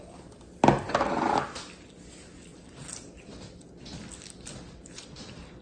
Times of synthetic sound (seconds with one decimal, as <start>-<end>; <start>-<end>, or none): none